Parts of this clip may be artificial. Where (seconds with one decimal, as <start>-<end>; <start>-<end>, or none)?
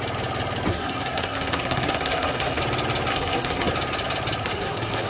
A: 0.7-2.6; 3.1-3.7; 4.4-5.1